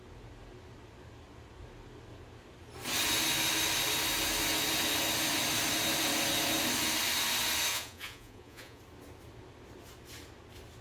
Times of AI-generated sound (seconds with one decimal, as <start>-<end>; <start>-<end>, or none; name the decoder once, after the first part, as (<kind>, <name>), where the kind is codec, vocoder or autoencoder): 7.7-8.8 (vocoder, Vocos)